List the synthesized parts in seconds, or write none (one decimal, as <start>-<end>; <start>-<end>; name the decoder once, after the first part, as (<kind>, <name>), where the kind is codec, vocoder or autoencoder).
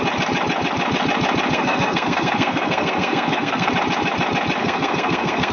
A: 1.5-3.7 (codec, SNAC); 4.6-5.5